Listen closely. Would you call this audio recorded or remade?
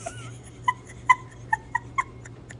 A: recorded